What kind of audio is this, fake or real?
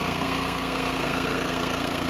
fake